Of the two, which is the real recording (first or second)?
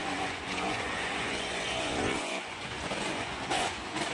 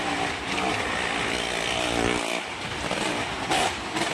second